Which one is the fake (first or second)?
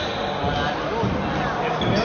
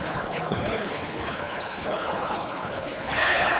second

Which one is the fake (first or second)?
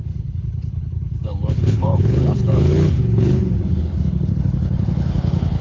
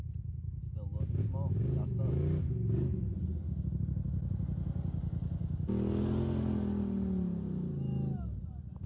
first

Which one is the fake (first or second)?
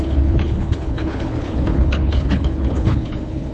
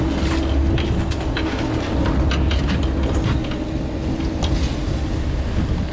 first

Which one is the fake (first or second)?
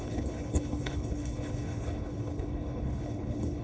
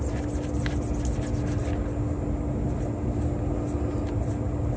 first